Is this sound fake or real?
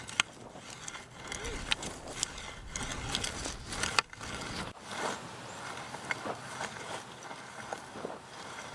real